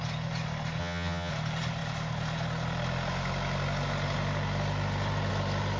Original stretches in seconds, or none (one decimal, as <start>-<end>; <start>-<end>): 0.0-0.8; 1.3-5.8